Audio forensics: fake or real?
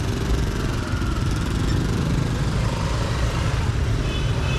fake